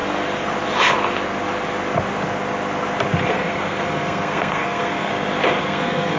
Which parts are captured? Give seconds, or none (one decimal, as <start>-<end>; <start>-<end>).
0.0-3.3; 5.1-5.6